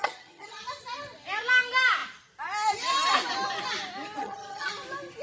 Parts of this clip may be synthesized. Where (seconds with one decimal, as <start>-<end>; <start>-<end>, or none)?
0.0-0.6; 4.2-4.7